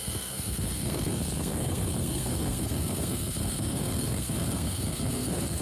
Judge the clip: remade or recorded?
remade